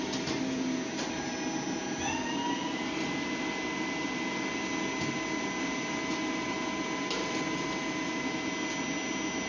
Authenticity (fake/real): real